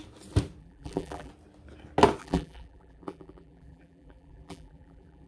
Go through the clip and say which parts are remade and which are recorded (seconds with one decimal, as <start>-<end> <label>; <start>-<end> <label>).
0.0-0.6 recorded; 0.6-1.3 remade; 1.3-2.2 recorded; 2.2-5.3 remade